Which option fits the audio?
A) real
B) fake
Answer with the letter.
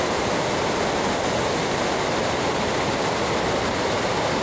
A